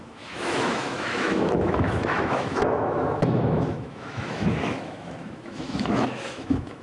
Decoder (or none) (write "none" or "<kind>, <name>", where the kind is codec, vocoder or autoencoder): autoencoder, DAC-VAE